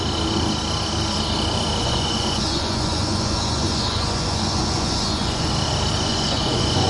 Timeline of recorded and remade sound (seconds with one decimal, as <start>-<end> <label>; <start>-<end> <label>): 0.0-1.8 recorded; 1.8-5.5 remade; 5.5-6.1 recorded; 6.1-6.9 remade